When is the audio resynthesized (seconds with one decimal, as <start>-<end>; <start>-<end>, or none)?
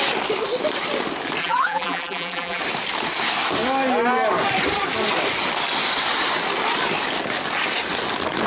1.4-2.6